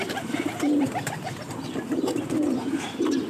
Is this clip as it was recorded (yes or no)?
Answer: no